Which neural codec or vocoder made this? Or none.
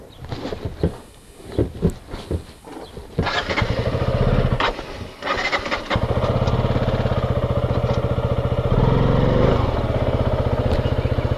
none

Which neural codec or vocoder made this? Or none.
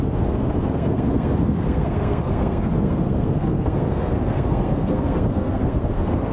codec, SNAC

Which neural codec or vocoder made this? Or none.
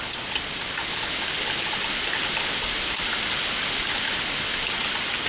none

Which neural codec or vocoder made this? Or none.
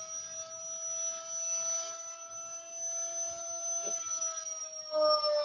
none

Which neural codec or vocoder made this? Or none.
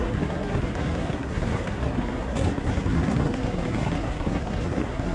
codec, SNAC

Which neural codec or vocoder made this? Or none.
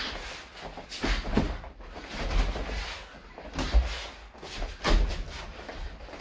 none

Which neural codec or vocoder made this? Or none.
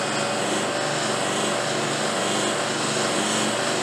none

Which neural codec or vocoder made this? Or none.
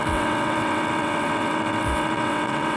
vocoder, WaveNeXt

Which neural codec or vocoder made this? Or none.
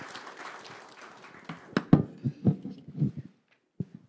none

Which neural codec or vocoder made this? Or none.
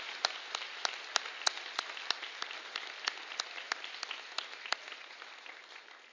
none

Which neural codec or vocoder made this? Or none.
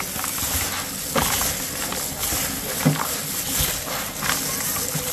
none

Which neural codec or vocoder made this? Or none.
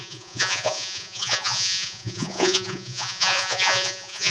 vocoder, Vocos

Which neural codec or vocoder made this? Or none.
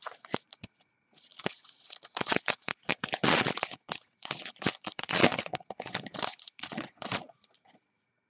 vocoder, Vocos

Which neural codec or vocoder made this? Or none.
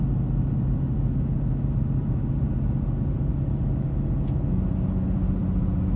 none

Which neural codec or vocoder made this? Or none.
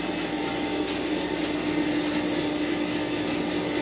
none